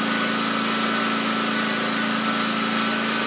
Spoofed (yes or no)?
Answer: no